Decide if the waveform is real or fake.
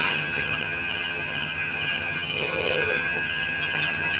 fake